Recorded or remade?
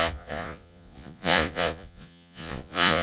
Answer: remade